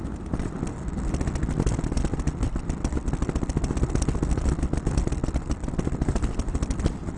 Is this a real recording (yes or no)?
yes